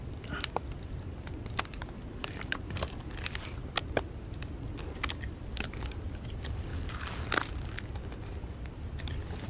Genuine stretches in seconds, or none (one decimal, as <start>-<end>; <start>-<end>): 0.0-9.5